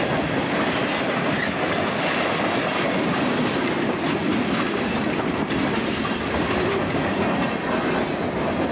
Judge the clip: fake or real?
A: real